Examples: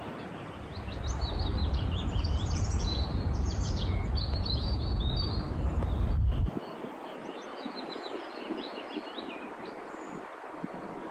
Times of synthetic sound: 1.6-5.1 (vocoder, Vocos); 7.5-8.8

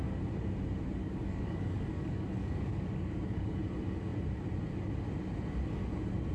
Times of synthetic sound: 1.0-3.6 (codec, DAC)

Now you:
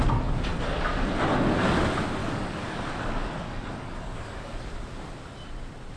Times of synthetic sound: 2.2-4.6 (codec, DAC)

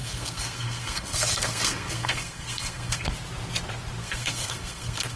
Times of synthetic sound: 0.0-3.1 (codec, SNAC); 4.0-5.2